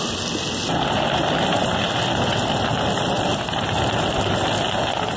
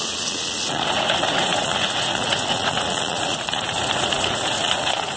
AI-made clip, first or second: second